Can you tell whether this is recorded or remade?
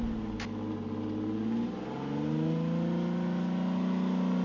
recorded